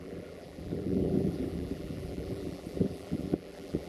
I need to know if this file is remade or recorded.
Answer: remade